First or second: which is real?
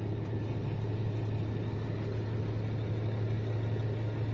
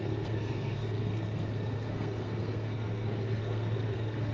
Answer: first